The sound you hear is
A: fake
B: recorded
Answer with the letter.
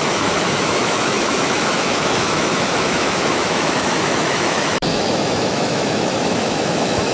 A